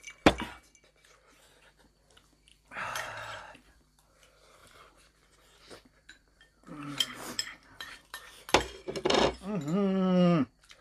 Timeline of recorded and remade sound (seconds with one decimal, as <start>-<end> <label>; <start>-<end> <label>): 0.0-2.5 recorded; 2.5-3.4 remade; 3.4-4.6 recorded; 4.6-8.4 remade; 8.4-10.8 recorded